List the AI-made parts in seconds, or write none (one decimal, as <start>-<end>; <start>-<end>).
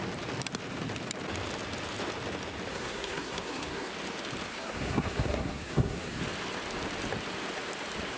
2.7-3.9; 4.5-6.2